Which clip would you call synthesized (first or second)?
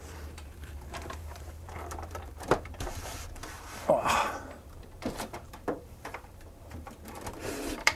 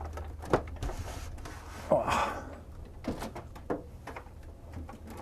first